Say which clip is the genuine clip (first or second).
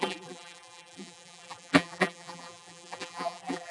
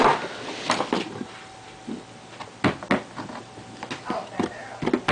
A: second